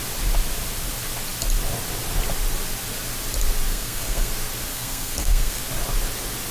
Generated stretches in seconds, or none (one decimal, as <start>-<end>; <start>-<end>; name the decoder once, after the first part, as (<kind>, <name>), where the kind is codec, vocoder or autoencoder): 3.7-4.3 (codec, SNAC); 4.7-5.6